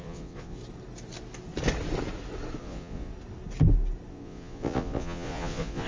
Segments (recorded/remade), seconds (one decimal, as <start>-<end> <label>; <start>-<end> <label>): 0.0-0.6 remade; 0.6-2.6 recorded; 2.6-3.1 remade; 3.1-4.1 recorded; 4.1-5.9 remade